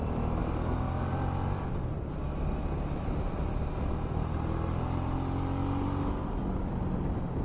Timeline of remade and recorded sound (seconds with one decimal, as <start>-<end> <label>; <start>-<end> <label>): 0.0-7.4 recorded